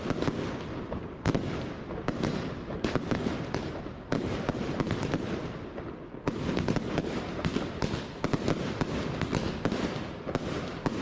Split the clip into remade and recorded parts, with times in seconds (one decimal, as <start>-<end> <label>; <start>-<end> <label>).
0.0-0.7 recorded; 0.7-5.1 remade; 5.1-11.0 recorded